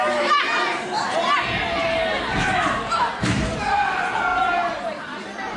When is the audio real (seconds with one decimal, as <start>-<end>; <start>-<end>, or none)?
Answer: 0.5-3.1